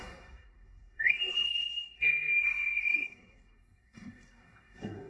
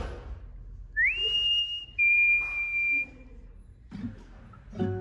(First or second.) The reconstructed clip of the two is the first